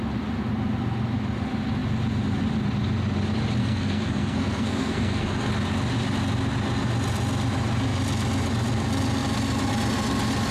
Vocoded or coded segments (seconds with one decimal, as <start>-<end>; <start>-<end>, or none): 3.6-5.5